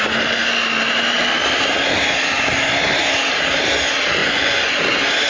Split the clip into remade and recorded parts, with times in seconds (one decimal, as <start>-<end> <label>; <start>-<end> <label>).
0.0-4.2 recorded; 4.2-4.8 remade; 4.8-5.3 recorded